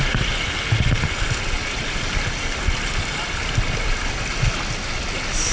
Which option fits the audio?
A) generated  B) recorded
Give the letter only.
B